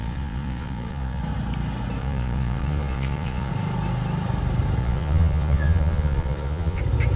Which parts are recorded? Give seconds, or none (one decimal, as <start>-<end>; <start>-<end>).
1.2-2.0; 3.5-4.8; 6.8-7.2